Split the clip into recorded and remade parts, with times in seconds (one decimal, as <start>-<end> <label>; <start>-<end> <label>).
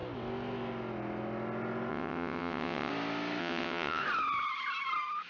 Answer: 0.0-1.9 recorded; 1.9-2.9 remade; 2.9-3.4 recorded; 3.4-4.0 remade; 4.0-5.3 recorded